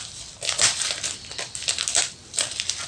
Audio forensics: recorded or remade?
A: recorded